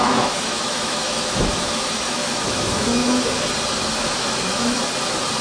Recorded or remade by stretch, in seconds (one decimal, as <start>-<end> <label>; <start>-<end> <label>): 0.0-3.0 remade; 3.0-3.9 recorded; 3.9-4.8 remade; 4.8-5.4 recorded

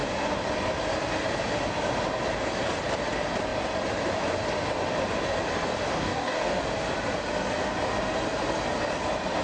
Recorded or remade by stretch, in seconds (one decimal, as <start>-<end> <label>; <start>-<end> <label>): 0.0-5.9 recorded; 5.9-6.6 remade; 6.6-9.4 recorded

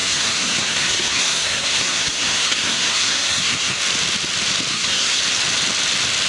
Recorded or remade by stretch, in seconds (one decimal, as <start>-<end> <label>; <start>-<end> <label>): 0.0-3.8 remade; 3.8-4.7 recorded; 4.7-5.2 remade; 5.2-6.3 recorded

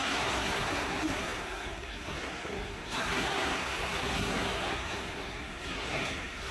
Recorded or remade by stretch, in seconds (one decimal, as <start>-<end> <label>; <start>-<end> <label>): 0.0-6.5 remade

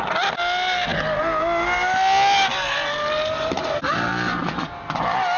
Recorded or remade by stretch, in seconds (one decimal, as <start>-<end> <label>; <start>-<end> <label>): 0.0-5.4 recorded

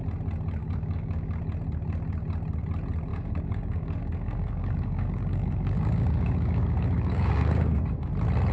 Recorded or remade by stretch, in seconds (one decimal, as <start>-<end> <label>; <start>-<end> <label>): 0.0-0.6 recorded; 0.6-1.4 remade; 1.4-3.1 recorded; 3.1-8.1 remade; 8.1-8.5 recorded

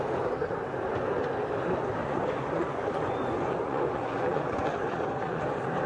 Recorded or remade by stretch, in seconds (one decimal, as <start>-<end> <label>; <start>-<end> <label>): 0.0-2.0 recorded; 2.0-5.4 remade; 5.4-5.9 recorded

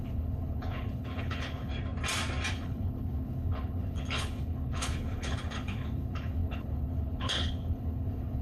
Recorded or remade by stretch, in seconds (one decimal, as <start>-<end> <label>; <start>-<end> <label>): 0.0-1.7 remade; 1.7-2.5 recorded; 2.5-8.4 remade